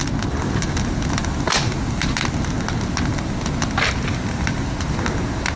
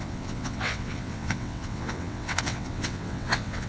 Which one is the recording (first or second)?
first